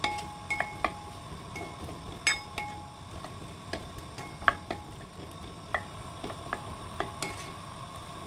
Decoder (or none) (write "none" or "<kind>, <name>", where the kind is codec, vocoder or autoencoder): none